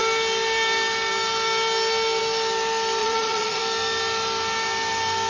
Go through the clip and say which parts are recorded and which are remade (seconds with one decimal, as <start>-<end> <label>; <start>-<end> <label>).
0.0-3.0 recorded; 3.0-3.6 remade; 3.6-5.3 recorded